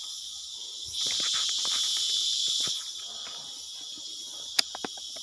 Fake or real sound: real